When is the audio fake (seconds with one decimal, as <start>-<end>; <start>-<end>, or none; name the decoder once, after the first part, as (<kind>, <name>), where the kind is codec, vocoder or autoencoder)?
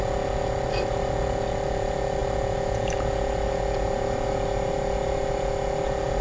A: none